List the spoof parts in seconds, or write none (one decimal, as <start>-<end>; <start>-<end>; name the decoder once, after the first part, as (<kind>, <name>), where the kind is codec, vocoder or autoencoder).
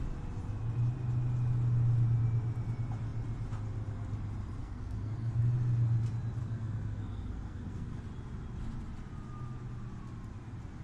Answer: 4.6-5.4 (codec, SNAC); 6.4-8.0